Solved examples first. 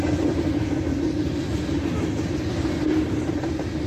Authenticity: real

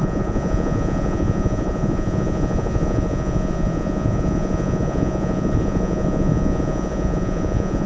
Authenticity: fake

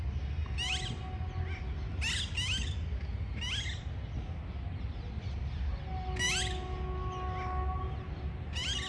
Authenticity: real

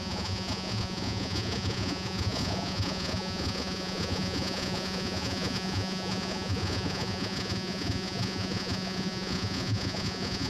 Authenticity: fake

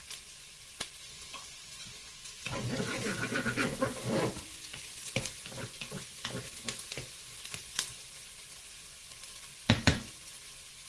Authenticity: fake